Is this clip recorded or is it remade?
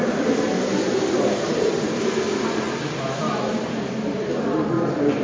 recorded